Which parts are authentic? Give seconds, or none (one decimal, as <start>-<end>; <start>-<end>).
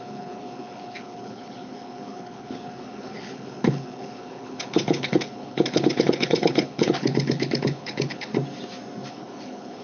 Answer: 8.3-9.1